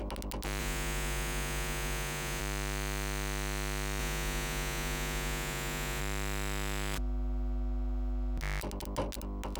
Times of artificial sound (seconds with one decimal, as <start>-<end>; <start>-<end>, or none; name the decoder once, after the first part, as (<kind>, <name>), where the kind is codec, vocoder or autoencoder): 0.6-2.4 (vocoder, Vocos); 4.0-6.0